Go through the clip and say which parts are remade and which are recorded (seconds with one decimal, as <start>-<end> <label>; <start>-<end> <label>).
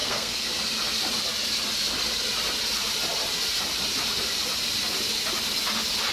0.0-0.5 remade; 0.5-6.1 recorded